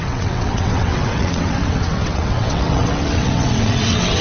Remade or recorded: remade